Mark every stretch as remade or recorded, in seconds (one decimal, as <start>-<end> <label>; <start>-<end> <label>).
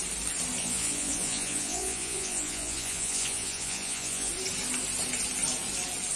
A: 0.0-0.6 recorded; 0.6-4.3 remade; 4.3-6.2 recorded